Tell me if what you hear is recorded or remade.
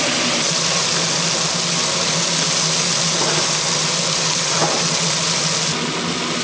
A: recorded